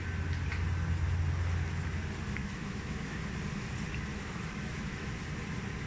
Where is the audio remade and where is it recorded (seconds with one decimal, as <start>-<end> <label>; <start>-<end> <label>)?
0.0-2.4 recorded; 2.4-3.2 remade; 3.2-4.1 recorded; 4.1-5.1 remade; 5.1-5.9 recorded